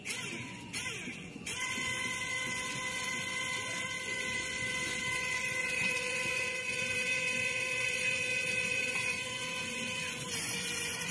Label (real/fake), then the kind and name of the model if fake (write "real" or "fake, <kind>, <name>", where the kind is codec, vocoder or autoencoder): fake, vocoder, Vocos